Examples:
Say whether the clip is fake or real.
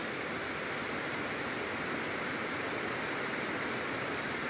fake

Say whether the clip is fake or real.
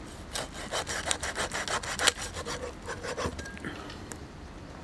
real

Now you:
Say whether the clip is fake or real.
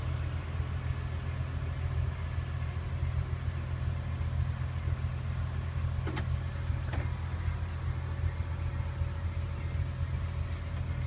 real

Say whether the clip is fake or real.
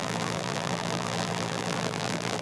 fake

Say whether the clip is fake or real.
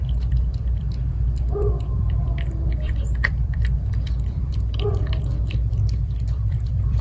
fake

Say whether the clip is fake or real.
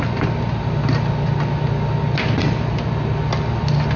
real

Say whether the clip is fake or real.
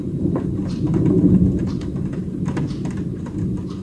fake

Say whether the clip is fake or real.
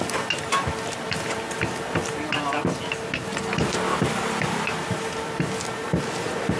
real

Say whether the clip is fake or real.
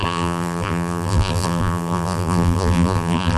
fake